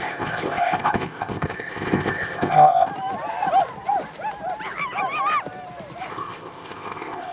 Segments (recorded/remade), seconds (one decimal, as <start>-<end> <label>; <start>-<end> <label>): 0.0-2.9 remade; 2.9-6.1 recorded; 6.1-7.3 remade